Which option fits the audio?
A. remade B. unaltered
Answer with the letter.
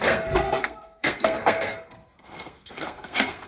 A